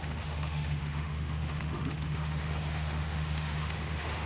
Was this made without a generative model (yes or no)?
no